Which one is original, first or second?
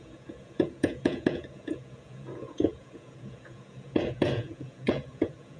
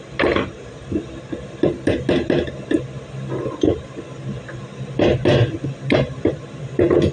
second